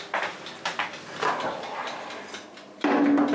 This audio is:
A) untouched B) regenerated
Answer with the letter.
A